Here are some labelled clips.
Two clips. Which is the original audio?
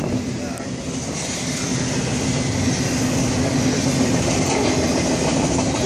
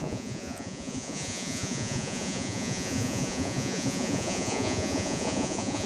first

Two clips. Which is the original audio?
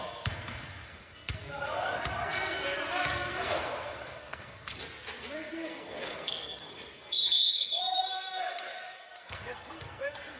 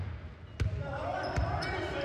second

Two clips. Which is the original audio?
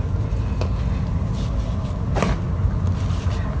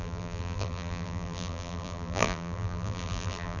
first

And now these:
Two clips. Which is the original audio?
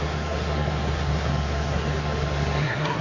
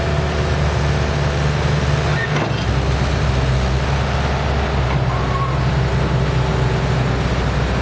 second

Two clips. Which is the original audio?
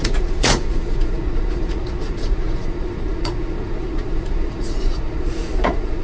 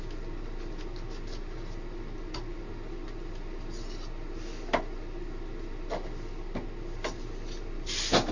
second